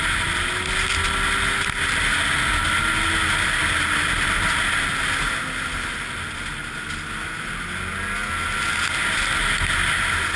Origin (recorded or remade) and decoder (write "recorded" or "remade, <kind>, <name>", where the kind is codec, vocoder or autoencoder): recorded